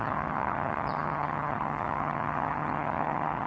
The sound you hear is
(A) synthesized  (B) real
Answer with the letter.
A